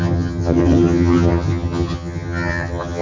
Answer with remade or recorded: remade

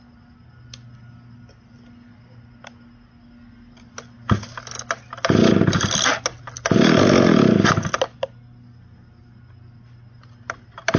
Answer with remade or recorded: recorded